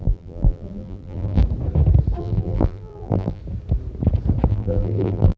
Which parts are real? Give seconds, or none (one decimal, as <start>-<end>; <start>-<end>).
1.4-2.2; 3.4-4.5